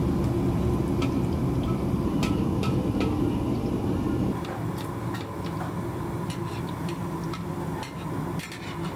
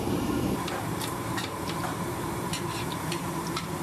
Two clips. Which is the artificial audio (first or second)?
second